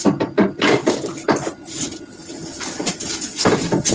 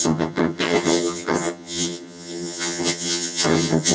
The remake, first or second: second